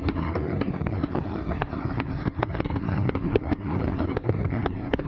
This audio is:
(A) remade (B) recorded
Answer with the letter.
A